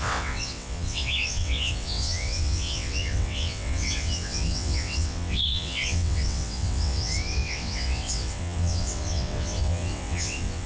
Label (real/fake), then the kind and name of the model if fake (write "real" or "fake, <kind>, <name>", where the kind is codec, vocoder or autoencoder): fake, vocoder, WaveNeXt